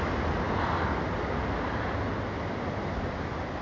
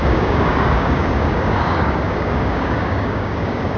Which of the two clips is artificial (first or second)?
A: second